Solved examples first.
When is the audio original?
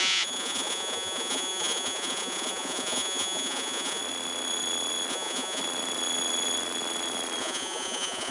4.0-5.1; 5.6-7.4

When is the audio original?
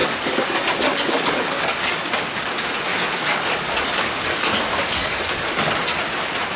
2.5-2.9; 5.7-6.6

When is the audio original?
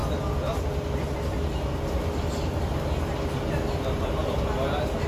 0.0-5.1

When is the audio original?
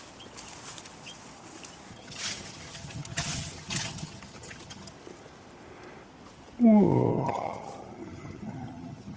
0.0-1.9; 4.9-7.1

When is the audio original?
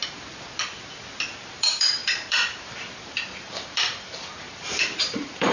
0.0-1.5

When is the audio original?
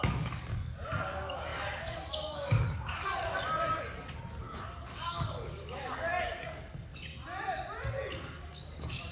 6.9-8.1